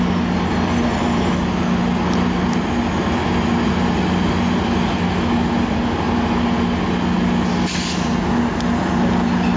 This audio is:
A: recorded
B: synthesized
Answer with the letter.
A